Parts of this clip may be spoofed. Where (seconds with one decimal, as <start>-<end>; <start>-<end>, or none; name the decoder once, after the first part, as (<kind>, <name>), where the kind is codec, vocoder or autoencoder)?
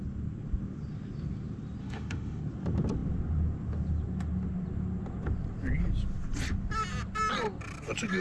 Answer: 1.8-2.4 (autoencoder, DAC-VAE)